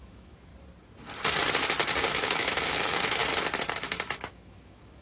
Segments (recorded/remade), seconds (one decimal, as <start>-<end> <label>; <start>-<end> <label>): 0.0-0.5 remade; 0.5-2.1 recorded; 2.1-3.2 remade; 3.2-3.7 recorded; 3.7-5.0 remade